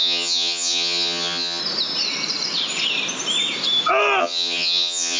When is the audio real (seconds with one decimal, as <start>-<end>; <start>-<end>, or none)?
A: 1.6-4.2